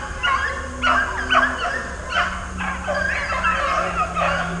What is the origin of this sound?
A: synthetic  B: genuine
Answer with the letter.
B